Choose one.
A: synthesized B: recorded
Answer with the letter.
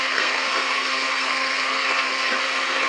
A